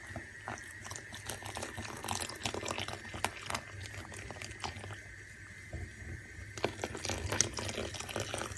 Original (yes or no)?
yes